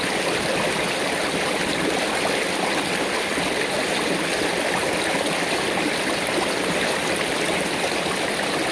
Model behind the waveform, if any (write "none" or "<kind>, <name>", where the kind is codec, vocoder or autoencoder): none